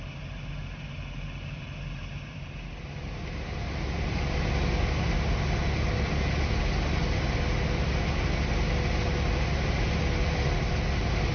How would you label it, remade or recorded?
recorded